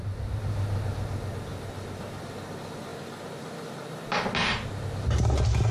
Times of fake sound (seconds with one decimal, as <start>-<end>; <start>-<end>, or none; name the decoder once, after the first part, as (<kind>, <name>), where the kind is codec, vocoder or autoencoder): 1.5-2.2 (vocoder, BigVGAN v2); 2.9-4.0